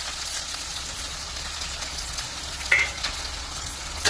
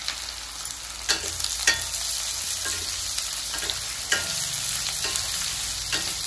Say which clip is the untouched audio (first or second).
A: second